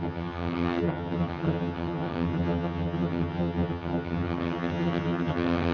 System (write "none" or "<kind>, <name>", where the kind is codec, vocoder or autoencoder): vocoder, HiFi-GAN